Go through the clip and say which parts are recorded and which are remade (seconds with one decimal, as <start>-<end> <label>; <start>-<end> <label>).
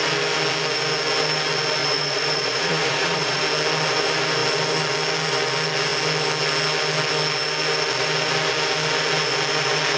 0.0-1.8 recorded; 1.8-3.4 remade; 3.4-10.0 recorded